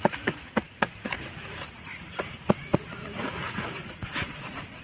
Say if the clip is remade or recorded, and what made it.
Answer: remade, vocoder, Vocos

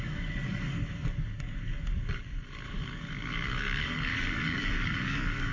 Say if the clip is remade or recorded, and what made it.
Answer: remade, codec, DAC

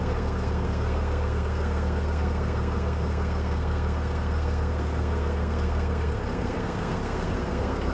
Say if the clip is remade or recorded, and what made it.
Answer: remade, codec, SNAC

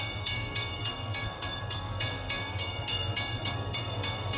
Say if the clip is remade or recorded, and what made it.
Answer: remade, codec, SNAC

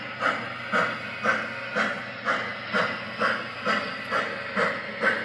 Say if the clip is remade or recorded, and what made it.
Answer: recorded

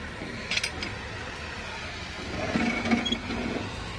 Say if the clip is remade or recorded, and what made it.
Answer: recorded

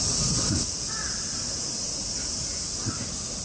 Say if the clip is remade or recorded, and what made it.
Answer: recorded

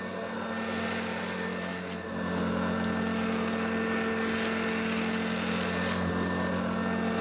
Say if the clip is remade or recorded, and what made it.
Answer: recorded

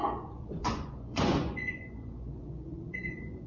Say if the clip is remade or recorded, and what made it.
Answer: remade, vocoder, Vocos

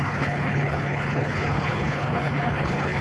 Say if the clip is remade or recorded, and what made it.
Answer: remade, codec, HILCodec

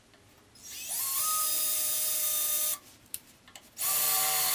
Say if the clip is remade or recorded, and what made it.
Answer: recorded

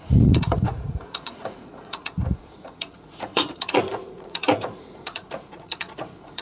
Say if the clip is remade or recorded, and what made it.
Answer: remade, vocoder, Vocos